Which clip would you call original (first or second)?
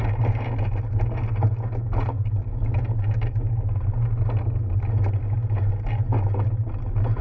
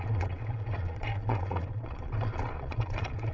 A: first